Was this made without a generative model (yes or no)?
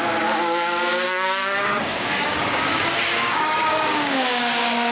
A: no